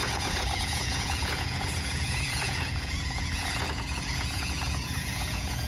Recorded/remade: remade